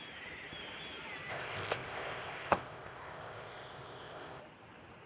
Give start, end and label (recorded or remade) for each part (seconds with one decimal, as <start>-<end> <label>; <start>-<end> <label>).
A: 0.0-1.3 recorded; 1.3-4.4 remade; 4.4-5.1 recorded

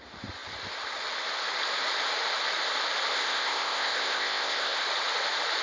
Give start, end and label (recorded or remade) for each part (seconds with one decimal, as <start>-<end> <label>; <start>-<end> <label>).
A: 0.0-3.1 recorded; 3.1-4.8 remade; 4.8-5.6 recorded

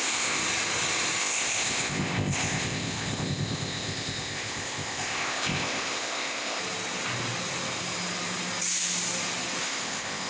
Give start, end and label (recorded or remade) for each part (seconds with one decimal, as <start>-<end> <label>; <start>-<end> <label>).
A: 0.0-0.4 remade; 0.4-1.2 recorded; 1.2-6.6 remade; 6.6-9.6 recorded; 9.6-10.3 remade

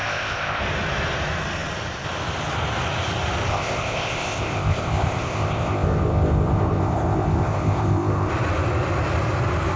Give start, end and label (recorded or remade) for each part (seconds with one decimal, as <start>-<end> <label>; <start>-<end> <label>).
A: 0.0-0.6 remade; 0.6-3.5 recorded; 3.5-8.3 remade; 8.3-9.8 recorded

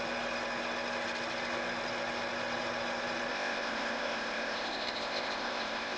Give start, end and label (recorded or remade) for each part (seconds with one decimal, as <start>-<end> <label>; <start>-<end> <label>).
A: 0.0-3.3 recorded; 3.3-6.0 remade